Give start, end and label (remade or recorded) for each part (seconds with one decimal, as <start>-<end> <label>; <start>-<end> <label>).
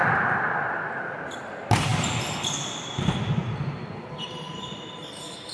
0.0-5.5 recorded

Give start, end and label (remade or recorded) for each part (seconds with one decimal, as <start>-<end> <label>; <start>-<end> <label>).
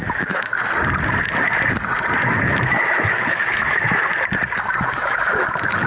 0.0-0.5 remade; 0.5-2.2 recorded; 2.2-4.0 remade; 4.0-4.8 recorded; 4.8-5.9 remade